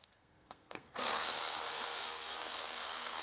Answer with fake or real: fake